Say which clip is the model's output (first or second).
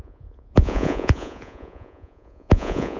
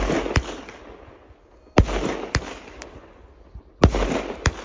first